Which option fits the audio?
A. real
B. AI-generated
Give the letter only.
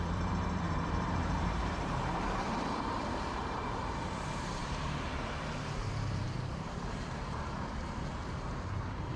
B